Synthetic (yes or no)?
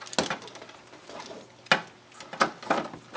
no